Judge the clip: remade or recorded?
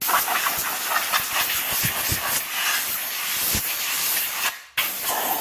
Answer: recorded